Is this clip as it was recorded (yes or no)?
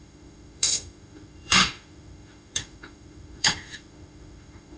no